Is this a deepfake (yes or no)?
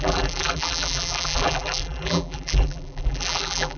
yes